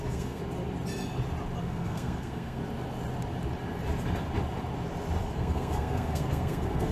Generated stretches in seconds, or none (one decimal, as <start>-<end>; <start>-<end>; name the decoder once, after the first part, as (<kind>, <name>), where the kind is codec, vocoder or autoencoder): 0.0-0.4 (codec, SNAC); 1.6-2.6; 5.2-6.9